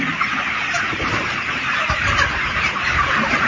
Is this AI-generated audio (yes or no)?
yes